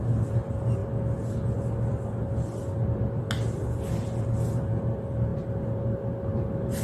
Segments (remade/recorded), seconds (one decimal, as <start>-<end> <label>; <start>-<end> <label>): 0.0-6.8 recorded